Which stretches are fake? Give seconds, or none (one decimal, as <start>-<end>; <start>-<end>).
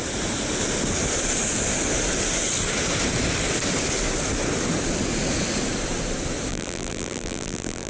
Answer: 6.5-7.9